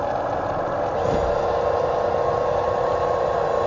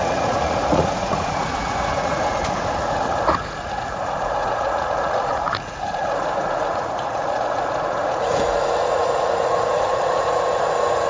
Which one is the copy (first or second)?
second